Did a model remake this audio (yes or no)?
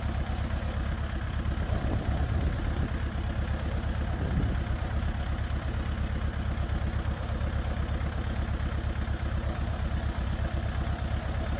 no